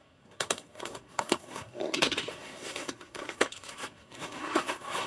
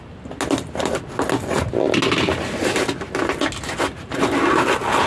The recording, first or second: second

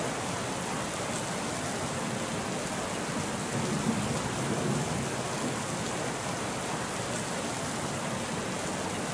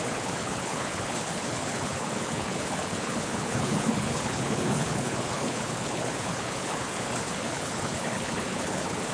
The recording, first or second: first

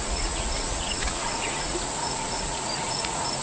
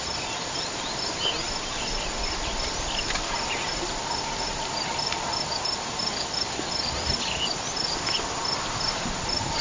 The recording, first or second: second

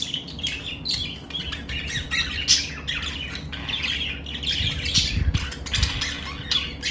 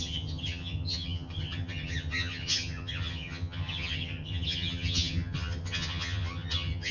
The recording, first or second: first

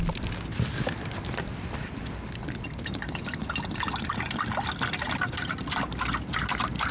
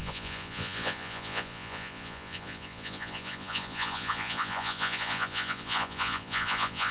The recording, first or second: first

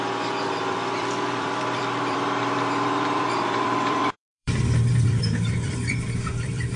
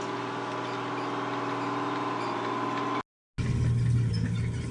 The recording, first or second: second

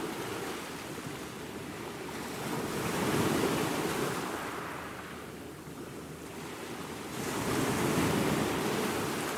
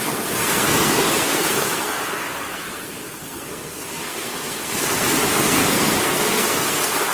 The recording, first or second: first